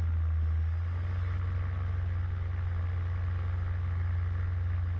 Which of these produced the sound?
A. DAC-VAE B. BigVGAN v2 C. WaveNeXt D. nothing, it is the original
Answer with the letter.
D